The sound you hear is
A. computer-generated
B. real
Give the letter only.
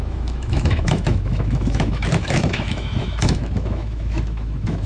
A